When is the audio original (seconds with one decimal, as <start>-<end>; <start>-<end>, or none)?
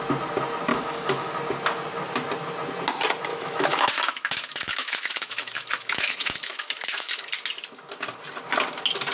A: 0.0-0.7; 1.3-3.3; 7.2-9.1